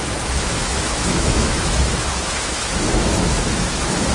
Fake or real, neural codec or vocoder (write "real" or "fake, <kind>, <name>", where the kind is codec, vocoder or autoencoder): fake, autoencoder, DAC-VAE